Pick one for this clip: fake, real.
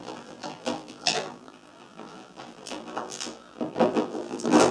fake